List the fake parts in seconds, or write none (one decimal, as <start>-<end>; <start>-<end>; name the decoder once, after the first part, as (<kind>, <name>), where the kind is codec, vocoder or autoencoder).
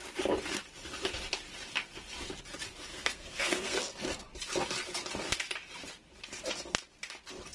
2.9-3.8 (codec, SNAC)